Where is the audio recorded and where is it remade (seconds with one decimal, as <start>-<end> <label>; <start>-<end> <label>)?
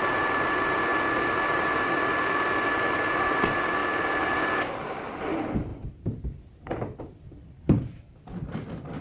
0.0-5.7 recorded; 5.7-7.0 remade; 7.0-9.0 recorded